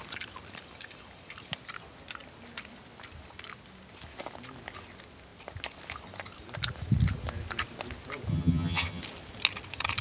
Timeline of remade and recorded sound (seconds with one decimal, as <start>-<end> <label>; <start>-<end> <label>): 0.0-8.3 recorded; 8.3-9.0 remade; 9.0-10.0 recorded